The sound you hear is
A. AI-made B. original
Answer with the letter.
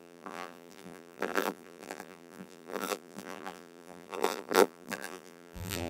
A